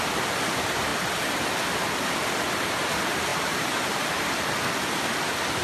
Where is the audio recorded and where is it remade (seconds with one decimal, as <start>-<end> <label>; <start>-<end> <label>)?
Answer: 0.0-3.3 recorded; 3.3-4.4 remade; 4.4-5.6 recorded